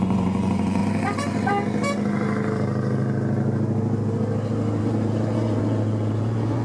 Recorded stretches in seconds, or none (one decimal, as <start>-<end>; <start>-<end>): 0.8-4.8